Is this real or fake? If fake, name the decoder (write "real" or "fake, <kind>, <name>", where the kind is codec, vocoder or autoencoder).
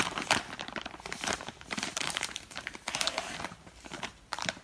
fake, vocoder, BigVGAN v2